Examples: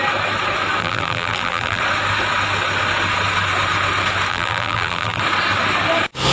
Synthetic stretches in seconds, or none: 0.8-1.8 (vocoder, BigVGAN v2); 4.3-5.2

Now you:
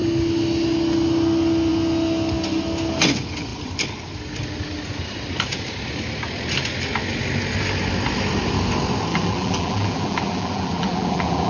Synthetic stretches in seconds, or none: 9.1-11.5 (vocoder, BigVGAN v2)

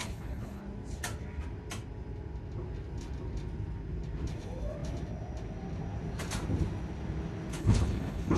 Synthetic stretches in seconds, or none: 0.0-0.6 (codec, HILCodec); 7.5-8.4

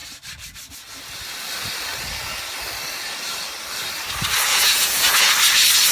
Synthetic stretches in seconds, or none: 4.5-5.3 (vocoder, Vocos)

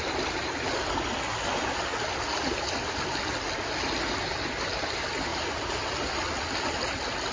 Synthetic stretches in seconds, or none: none

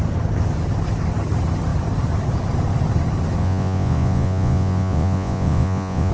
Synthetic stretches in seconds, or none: 3.4-6.1 (vocoder, Vocos)